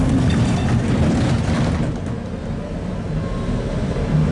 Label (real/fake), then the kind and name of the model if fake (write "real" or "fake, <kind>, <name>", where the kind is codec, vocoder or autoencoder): real